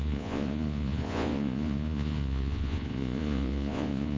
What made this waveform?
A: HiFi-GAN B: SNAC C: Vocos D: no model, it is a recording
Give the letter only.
C